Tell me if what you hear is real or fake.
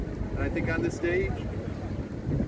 real